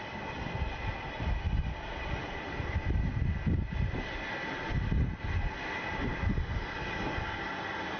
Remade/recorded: recorded